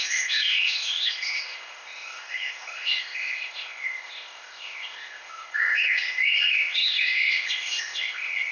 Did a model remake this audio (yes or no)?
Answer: yes